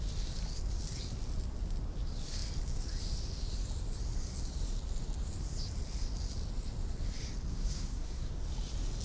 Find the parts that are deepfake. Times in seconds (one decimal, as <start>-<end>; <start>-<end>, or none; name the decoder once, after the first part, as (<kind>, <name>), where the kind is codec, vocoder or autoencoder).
7.5-8.3 (codec, SNAC)